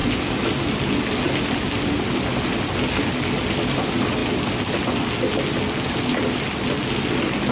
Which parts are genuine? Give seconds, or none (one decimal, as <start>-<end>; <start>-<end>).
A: 0.0-7.5

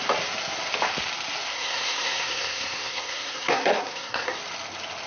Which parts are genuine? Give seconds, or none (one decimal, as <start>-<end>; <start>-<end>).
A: 0.0-1.5; 4.4-5.1